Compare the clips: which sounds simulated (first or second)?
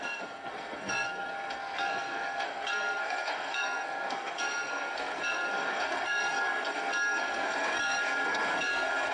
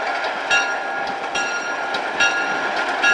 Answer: first